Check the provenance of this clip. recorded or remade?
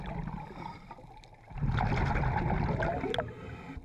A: recorded